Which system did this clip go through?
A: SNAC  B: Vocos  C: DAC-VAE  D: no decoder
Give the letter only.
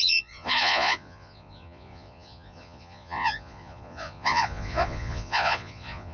B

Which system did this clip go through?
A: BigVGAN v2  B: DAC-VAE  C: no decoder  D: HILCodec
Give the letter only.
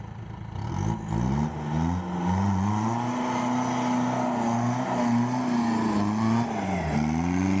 C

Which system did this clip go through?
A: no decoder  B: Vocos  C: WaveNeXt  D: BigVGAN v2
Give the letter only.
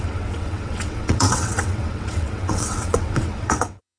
C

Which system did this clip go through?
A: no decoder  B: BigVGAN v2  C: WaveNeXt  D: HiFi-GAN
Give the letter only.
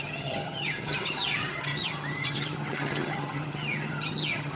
D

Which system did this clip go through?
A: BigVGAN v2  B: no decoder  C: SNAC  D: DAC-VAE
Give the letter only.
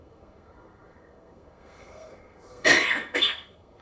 C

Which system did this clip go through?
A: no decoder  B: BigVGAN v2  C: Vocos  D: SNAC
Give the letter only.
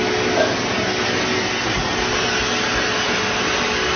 A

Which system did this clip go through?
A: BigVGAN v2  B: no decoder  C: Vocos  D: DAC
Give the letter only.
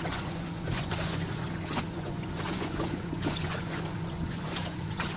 C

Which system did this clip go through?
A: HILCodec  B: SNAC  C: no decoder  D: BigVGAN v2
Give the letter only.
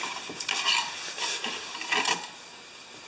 C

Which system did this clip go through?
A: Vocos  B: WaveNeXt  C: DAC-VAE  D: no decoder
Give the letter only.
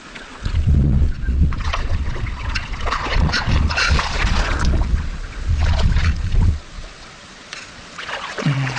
A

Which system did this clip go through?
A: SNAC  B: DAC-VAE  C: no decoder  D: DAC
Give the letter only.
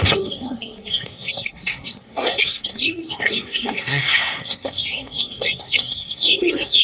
A